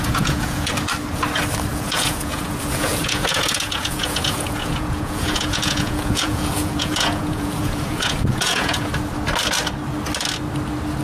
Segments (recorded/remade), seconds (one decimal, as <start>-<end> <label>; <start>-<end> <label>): 0.0-0.7 remade; 0.7-1.7 recorded; 1.7-8.9 remade; 8.9-11.0 recorded